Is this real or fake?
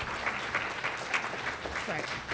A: real